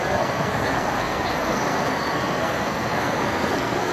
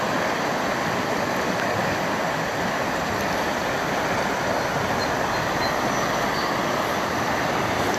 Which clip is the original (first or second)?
second